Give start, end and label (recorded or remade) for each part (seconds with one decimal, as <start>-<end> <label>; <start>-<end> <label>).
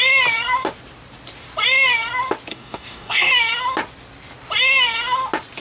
0.0-2.5 recorded; 2.5-3.3 remade; 3.3-5.6 recorded